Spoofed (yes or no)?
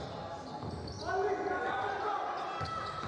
no